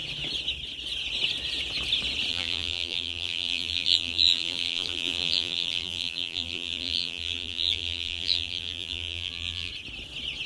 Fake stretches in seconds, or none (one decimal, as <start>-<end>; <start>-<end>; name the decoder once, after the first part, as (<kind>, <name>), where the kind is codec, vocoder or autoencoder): 2.3-9.7 (vocoder, BigVGAN v2)